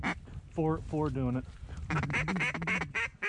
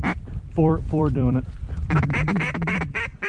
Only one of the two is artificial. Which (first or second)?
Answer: second